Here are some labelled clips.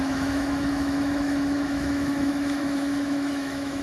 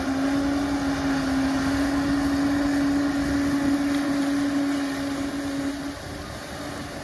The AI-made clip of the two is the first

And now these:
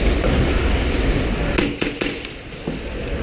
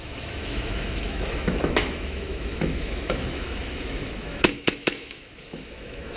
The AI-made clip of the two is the second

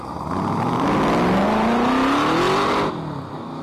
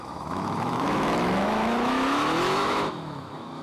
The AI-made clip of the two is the second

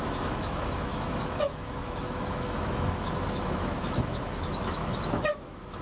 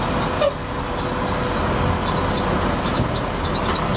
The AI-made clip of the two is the first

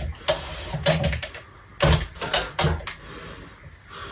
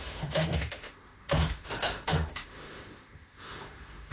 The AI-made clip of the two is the second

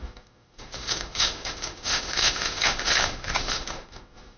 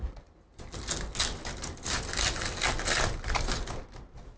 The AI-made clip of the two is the first